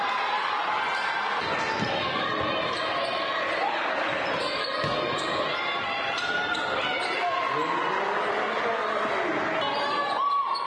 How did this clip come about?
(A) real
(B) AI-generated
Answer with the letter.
A